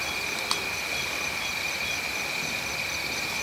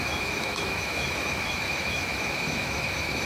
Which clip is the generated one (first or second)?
second